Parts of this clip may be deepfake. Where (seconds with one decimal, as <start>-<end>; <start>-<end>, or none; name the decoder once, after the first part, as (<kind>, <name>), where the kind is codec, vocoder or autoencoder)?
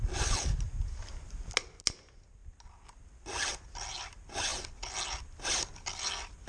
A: none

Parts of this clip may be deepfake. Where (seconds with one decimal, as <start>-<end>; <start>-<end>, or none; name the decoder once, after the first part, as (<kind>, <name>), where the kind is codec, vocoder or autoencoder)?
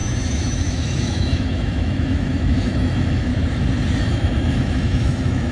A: 0.0-3.3 (autoencoder, DAC-VAE); 4.0-5.5